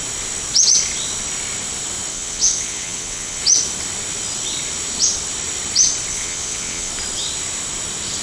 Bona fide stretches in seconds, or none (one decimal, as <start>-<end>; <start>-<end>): 0.0-2.1; 3.4-6.1; 6.9-8.2